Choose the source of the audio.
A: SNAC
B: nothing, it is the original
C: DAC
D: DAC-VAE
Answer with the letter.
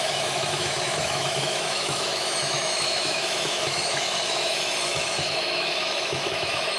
D